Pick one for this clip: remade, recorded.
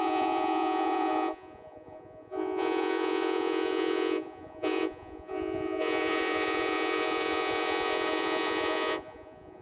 remade